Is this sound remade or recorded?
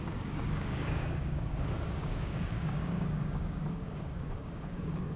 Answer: remade